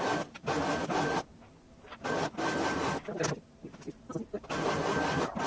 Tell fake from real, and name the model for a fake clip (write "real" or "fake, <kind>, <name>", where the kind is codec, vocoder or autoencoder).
real